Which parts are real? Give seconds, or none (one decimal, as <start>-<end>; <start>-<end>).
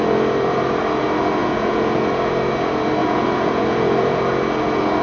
0.0-1.4; 2.0-3.0; 4.2-5.0